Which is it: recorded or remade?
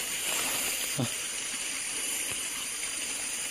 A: remade